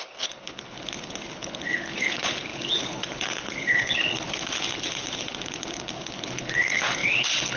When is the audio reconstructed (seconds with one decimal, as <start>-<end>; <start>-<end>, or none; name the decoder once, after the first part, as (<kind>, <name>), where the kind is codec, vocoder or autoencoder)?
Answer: 0.0-7.6 (codec, HILCodec)